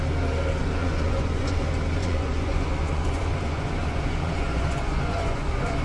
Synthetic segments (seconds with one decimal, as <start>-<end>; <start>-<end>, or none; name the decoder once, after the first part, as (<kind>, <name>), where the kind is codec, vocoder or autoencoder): 0.6-1.6 (vocoder, Vocos); 2.0-5.8